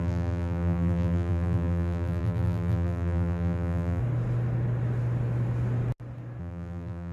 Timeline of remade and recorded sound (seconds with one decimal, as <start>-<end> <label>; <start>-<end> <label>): 0.0-4.0 remade; 4.0-6.4 recorded; 6.4-7.1 remade